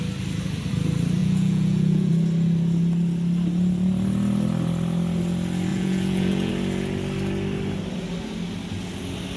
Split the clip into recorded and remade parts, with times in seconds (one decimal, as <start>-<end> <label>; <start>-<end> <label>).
0.0-1.2 recorded; 1.2-2.1 remade; 2.1-5.7 recorded; 5.7-6.5 remade; 6.5-9.4 recorded